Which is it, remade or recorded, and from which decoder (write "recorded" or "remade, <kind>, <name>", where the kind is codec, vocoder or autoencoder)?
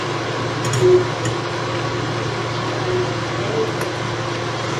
recorded